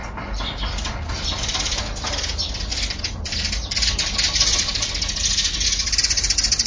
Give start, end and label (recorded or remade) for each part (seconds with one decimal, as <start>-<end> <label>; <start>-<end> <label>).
0.0-1.8 remade; 1.8-2.7 recorded; 2.7-4.9 remade; 4.9-6.7 recorded